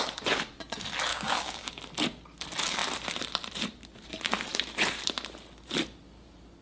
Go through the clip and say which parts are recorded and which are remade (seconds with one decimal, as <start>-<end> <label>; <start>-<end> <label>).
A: 0.0-1.1 recorded; 1.1-1.8 remade; 1.8-6.6 recorded